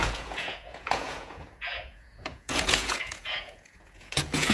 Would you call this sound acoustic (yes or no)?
no